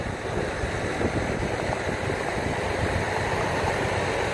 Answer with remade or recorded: recorded